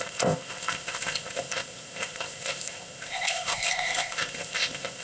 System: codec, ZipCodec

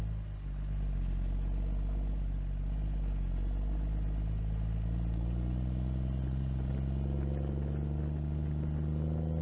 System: none